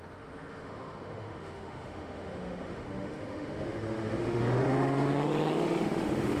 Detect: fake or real fake